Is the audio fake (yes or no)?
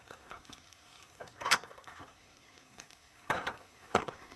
yes